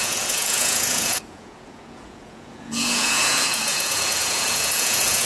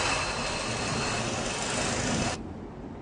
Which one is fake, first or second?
first